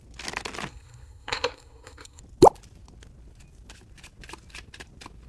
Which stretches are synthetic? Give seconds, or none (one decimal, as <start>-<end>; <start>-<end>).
0.7-2.2